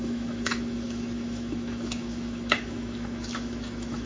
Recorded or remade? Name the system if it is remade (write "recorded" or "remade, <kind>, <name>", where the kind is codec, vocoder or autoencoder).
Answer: remade, autoencoder, DAC-VAE